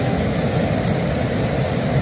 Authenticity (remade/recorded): recorded